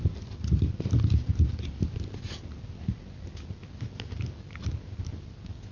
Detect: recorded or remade recorded